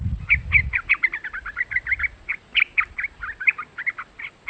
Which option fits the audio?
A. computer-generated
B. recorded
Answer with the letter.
B